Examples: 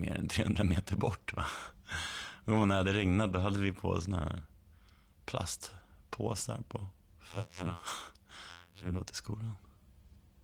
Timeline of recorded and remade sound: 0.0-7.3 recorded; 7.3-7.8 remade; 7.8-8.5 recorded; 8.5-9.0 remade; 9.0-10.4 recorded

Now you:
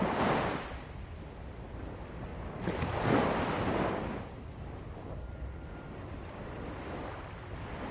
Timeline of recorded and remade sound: 0.0-2.3 remade; 2.3-3.2 recorded; 3.2-7.9 remade

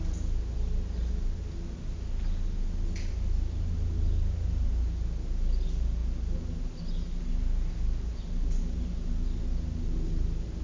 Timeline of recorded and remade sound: 0.0-10.6 recorded

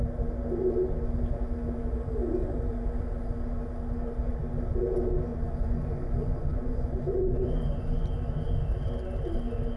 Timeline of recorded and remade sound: 0.0-5.3 recorded; 5.3-8.1 remade; 8.1-9.8 recorded

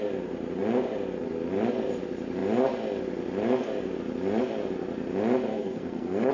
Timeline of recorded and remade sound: 0.0-5.5 recorded; 5.5-6.3 remade

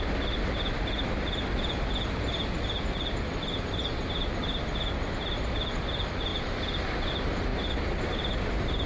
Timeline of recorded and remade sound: 0.0-6.3 recorded; 6.3-7.1 remade; 7.1-7.5 recorded; 7.5-8.9 remade

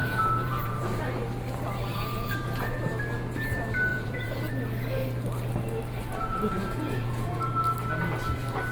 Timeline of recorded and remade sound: 0.0-1.0 remade; 1.0-1.9 recorded; 1.9-2.8 remade; 2.8-3.9 recorded; 3.9-4.5 remade; 4.5-6.0 recorded; 6.0-7.5 remade; 7.5-8.7 recorded

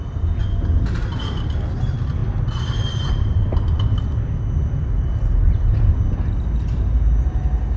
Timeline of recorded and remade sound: 0.0-7.8 recorded